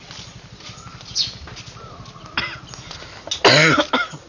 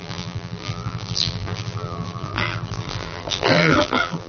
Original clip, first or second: first